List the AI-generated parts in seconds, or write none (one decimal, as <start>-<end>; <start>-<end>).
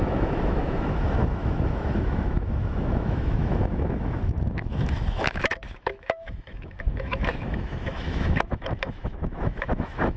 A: 0.0-10.2